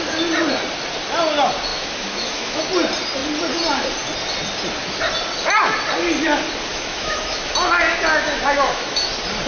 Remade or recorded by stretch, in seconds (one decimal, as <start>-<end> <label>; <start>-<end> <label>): 0.0-1.7 recorded; 1.7-2.6 remade; 2.6-6.7 recorded; 6.7-7.5 remade; 7.5-8.1 recorded; 8.1-9.1 remade; 9.1-9.5 recorded